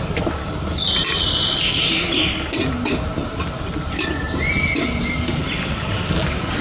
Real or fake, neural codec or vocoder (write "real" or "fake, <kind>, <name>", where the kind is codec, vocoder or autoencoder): real